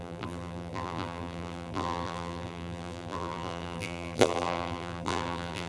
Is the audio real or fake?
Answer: fake